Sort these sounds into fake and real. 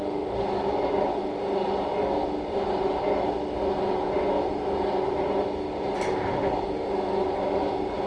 real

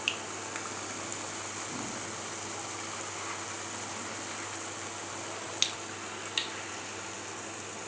real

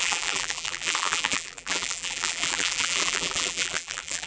fake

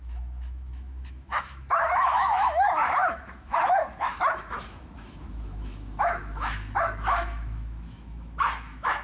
fake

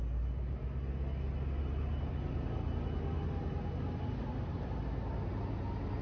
real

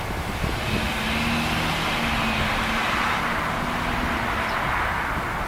real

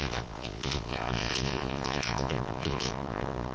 fake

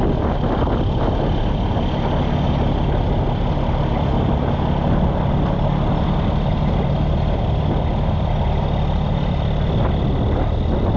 real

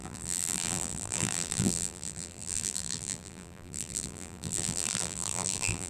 fake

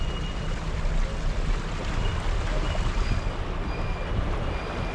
real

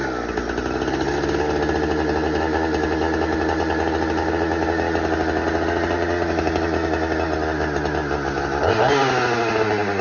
real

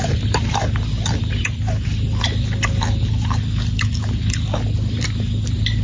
real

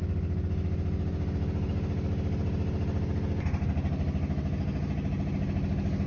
real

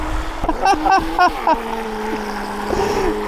real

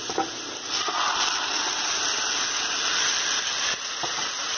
real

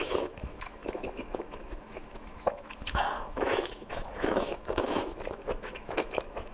fake